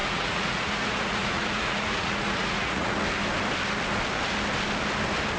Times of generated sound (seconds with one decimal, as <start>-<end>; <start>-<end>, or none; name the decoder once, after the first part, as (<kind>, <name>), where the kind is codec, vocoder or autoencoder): 0.0-3.0 (vocoder, Vocos)